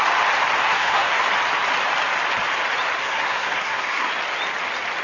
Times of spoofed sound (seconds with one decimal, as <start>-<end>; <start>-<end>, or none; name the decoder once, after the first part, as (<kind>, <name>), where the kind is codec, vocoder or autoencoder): 0.6-1.2 (codec, SNAC); 3.0-4.1